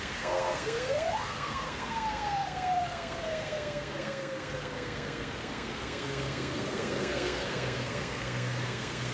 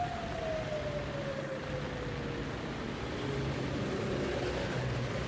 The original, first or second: second